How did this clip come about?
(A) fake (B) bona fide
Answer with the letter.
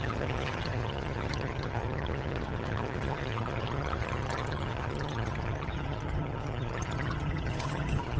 A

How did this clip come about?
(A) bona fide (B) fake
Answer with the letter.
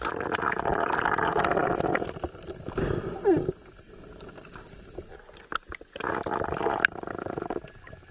A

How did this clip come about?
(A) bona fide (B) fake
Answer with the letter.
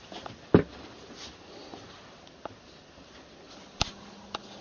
A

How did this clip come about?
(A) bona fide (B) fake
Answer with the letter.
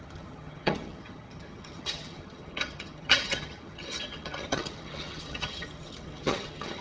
B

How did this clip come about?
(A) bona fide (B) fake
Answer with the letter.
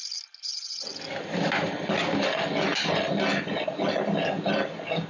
A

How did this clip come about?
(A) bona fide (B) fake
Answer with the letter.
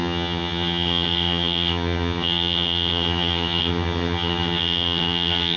B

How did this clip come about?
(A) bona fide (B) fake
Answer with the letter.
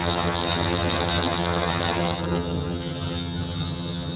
B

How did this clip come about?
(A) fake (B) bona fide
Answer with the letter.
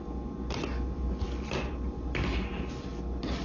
B